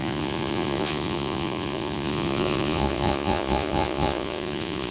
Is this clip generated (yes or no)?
yes